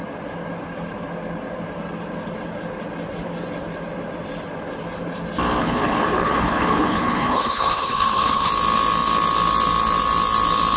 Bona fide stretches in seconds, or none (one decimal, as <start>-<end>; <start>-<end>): 0.0-5.6; 8.5-10.8